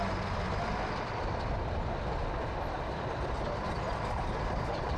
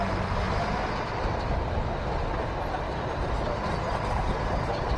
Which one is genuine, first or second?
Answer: second